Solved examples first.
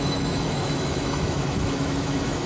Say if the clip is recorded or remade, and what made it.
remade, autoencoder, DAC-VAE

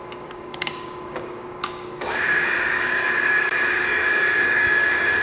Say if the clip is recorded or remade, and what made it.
remade, codec, DAC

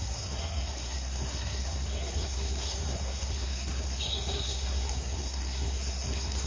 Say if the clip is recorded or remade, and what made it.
remade, codec, SNAC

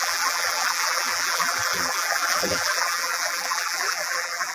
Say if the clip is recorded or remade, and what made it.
remade, vocoder, BigVGAN v2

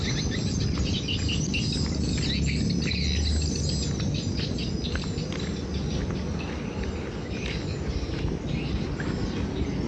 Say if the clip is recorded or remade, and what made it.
recorded